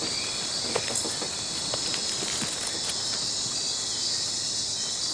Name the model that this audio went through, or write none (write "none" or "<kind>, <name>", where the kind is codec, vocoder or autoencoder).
none